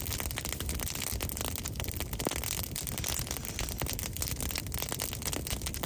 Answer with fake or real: real